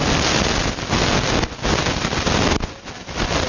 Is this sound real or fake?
real